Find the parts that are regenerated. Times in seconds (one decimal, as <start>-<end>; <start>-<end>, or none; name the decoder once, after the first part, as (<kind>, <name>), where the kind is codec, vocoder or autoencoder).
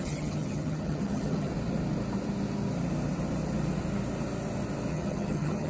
0.0-1.5 (vocoder, HiFi-GAN); 4.9-5.7